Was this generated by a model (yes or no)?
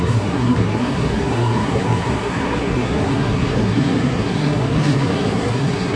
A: yes